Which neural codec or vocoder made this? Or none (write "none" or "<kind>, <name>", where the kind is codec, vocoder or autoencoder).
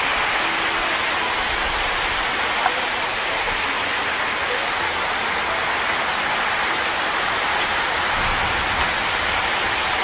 none